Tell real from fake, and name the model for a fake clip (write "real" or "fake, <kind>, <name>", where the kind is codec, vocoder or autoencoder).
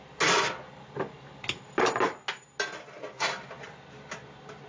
real